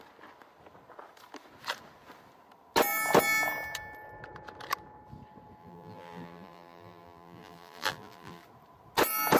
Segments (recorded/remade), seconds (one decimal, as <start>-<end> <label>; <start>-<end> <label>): 0.0-5.6 recorded; 5.6-8.4 remade; 8.4-9.4 recorded